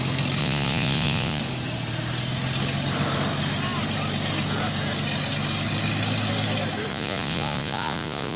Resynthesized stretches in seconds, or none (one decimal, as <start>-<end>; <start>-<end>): 0.4-1.4; 6.9-8.4